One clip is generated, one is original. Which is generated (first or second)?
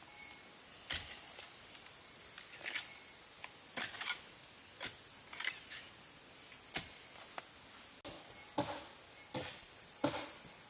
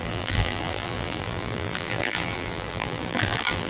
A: second